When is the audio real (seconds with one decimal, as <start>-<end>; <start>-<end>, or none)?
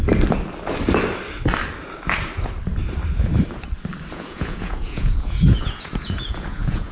0.0-4.1